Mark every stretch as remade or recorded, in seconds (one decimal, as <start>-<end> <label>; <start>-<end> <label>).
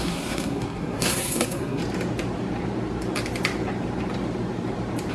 0.0-1.8 remade; 1.8-5.1 recorded